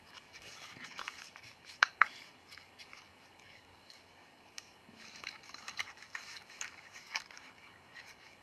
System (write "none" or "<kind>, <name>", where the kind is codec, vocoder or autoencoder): codec, DAC